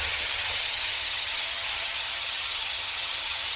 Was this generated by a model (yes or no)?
yes